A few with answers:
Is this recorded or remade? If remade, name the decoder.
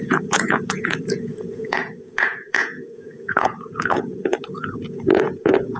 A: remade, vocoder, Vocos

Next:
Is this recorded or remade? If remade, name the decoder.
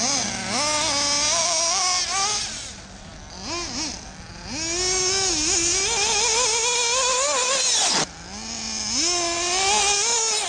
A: recorded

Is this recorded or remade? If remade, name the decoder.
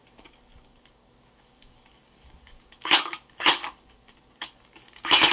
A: remade, codec, DAC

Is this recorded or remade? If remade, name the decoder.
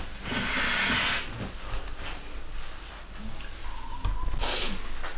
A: recorded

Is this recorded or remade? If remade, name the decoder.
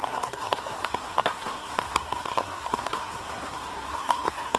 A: remade, codec, SNAC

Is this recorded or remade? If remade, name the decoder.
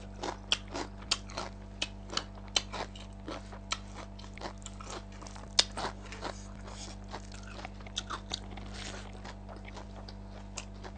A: recorded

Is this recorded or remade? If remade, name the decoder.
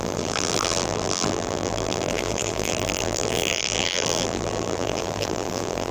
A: remade, vocoder, BigVGAN v2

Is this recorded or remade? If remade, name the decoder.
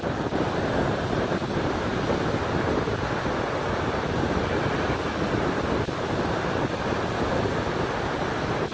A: recorded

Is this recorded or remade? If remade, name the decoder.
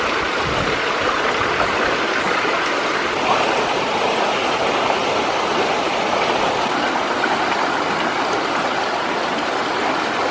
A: recorded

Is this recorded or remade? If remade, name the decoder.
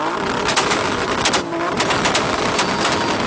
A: recorded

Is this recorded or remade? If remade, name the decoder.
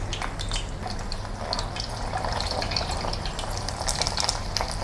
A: recorded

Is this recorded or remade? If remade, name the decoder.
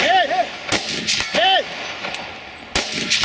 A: recorded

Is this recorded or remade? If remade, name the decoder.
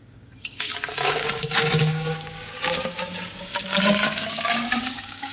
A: remade, codec, DAC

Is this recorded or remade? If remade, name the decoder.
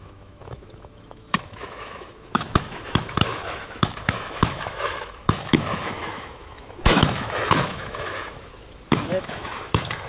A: remade, autoencoder, DAC-VAE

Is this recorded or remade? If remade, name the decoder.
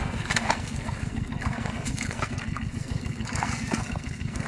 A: remade, codec, SNAC